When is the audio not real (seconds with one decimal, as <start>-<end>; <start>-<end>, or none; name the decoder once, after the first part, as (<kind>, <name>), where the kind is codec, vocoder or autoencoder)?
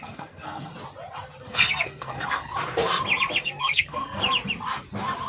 0.0-0.7 (codec, SNAC); 1.4-2.5; 3.4-4.2